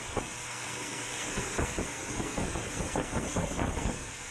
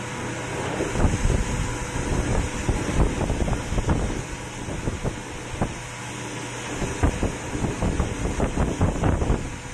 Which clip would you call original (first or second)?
second